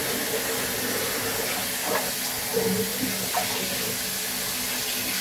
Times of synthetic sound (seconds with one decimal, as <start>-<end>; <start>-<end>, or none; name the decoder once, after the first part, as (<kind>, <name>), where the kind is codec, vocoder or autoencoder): none